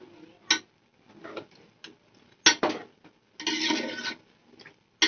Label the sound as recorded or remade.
recorded